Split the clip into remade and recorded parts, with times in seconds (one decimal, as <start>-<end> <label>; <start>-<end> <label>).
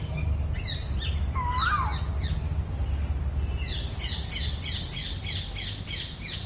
0.0-6.5 recorded